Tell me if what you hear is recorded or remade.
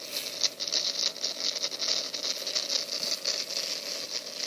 recorded